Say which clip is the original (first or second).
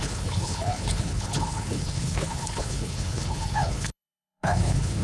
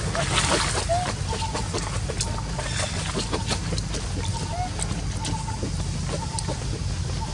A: second